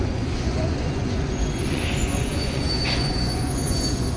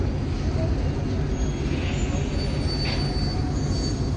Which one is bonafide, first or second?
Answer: second